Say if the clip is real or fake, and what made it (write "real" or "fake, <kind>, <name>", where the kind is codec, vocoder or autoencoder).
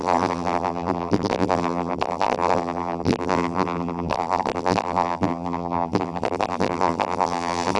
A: fake, vocoder, BigVGAN v2